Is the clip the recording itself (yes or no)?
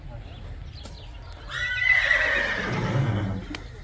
yes